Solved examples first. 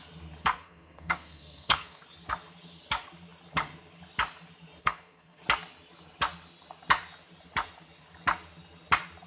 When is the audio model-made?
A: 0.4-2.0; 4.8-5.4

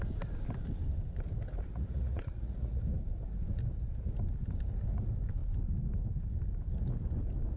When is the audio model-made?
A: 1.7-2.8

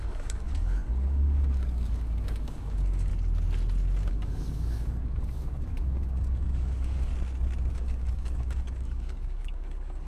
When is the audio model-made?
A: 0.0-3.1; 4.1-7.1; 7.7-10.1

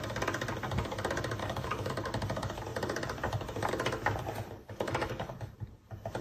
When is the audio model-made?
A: 1.4-1.9; 4.6-5.3

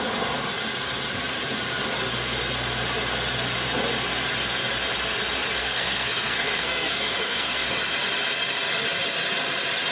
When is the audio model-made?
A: 5.6-7.7

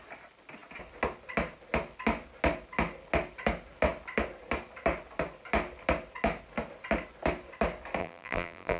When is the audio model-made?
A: 8.0-8.8

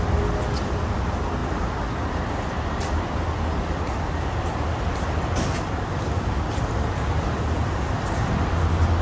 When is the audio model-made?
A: none